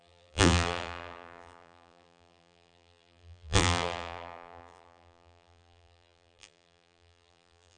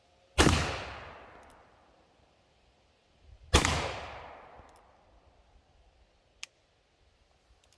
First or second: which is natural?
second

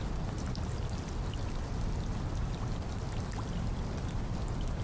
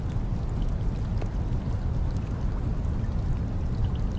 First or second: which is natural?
second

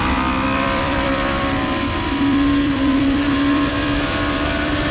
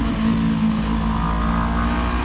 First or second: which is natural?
second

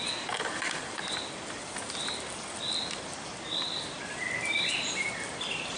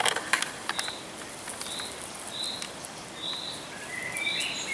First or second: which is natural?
second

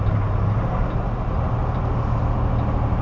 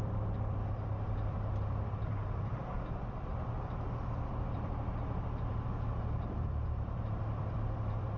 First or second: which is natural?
first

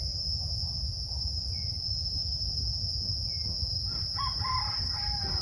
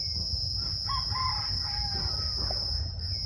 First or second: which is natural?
second